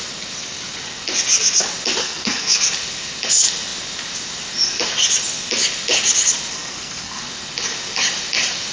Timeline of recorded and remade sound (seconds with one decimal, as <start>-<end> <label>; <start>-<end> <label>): 0.0-2.0 recorded; 2.0-2.6 remade; 2.6-6.5 recorded; 6.5-7.2 remade; 7.2-8.7 recorded